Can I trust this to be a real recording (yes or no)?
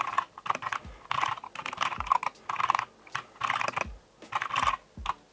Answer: yes